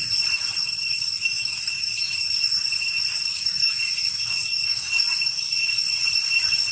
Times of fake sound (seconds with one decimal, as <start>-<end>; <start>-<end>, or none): 1.2-2.3; 3.1-3.7; 4.4-5.0